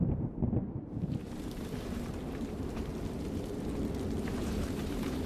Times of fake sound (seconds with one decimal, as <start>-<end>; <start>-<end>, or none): 0.0-2.9; 4.1-5.3